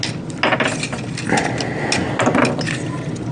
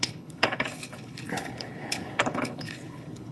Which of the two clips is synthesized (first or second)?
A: second